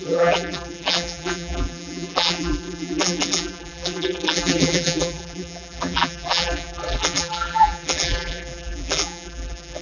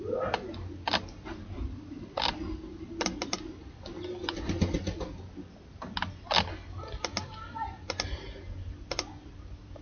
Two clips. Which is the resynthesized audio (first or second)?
first